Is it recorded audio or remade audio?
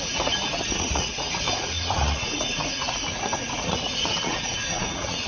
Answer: remade